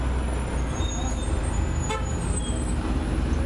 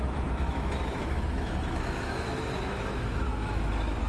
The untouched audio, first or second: first